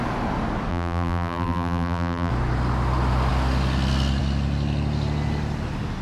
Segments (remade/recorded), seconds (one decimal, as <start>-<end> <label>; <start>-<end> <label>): 0.0-0.7 recorded; 0.7-2.3 remade; 2.3-6.0 recorded